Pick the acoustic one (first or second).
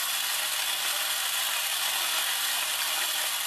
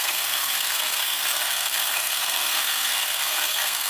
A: first